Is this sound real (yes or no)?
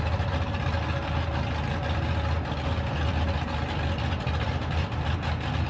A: yes